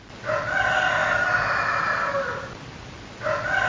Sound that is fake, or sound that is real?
real